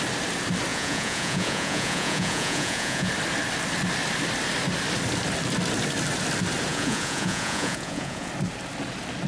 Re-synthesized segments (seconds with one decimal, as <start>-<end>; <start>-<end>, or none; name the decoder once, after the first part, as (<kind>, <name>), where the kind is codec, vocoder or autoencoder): 0.7-3.1 (vocoder, Vocos); 6.7-8.3